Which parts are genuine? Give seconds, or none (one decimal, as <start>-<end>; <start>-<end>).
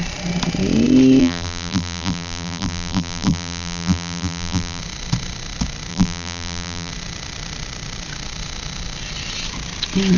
0.0-1.2; 4.8-5.9; 6.9-10.2